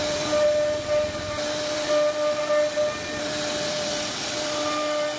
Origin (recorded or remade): recorded